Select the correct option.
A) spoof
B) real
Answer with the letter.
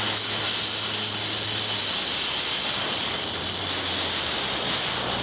B